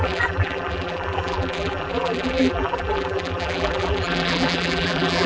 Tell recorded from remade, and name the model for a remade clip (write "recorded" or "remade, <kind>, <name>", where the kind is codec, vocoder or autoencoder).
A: remade, vocoder, BigVGAN v2